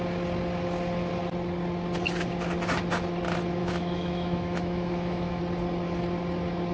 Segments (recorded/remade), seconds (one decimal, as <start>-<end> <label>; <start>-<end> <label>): 0.0-3.6 recorded; 3.6-5.4 remade; 5.4-6.7 recorded

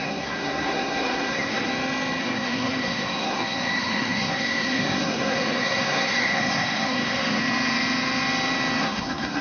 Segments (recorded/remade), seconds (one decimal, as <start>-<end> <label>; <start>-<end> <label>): 0.0-1.7 remade; 1.7-2.2 recorded; 2.2-7.4 remade; 7.4-8.8 recorded; 8.8-9.4 remade